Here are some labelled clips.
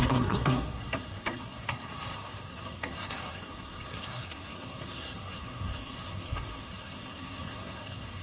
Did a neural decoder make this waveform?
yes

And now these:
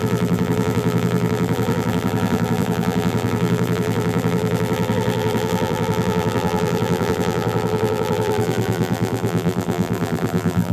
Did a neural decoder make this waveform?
yes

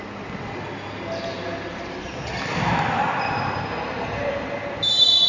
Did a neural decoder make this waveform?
no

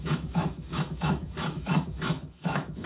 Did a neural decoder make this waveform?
yes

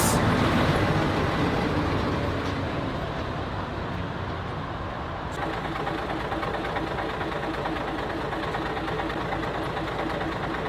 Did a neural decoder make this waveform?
no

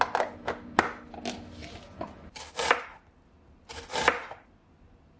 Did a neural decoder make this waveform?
no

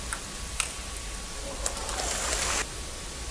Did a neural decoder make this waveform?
no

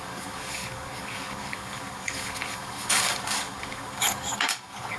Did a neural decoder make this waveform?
yes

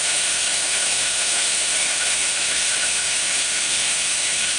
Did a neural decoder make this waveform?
yes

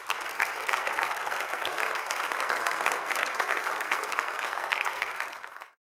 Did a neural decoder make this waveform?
yes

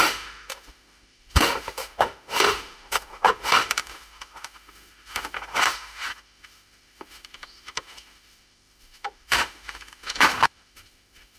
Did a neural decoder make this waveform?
yes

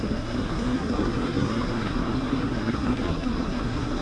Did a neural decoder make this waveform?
yes